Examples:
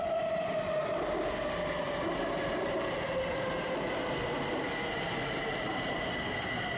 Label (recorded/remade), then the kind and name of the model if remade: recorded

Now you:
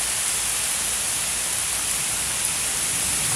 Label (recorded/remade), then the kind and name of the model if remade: recorded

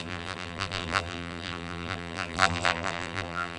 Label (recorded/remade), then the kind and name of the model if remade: remade, vocoder, BigVGAN v2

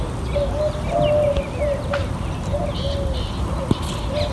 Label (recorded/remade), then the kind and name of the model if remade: recorded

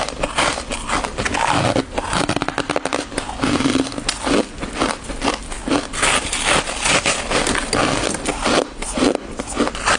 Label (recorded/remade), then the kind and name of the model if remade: recorded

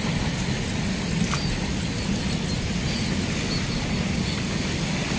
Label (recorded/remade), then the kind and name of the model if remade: recorded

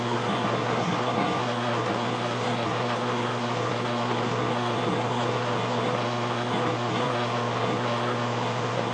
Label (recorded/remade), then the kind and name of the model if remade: remade, codec, SNAC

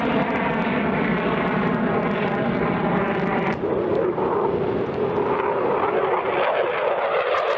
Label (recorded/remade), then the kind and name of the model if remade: recorded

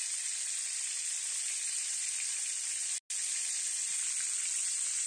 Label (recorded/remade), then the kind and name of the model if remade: recorded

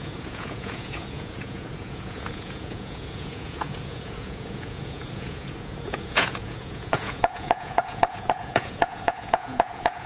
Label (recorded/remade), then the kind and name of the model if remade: remade, vocoder, Vocos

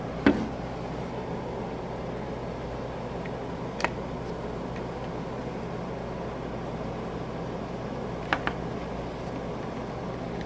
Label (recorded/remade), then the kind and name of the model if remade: recorded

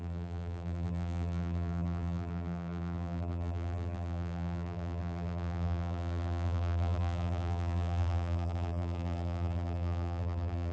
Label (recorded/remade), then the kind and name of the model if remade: remade, vocoder, BigVGAN v2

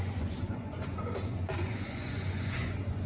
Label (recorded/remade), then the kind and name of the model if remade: remade, vocoder, Vocos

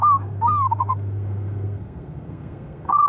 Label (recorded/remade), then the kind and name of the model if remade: remade, codec, SNAC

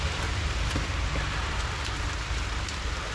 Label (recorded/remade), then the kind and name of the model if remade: recorded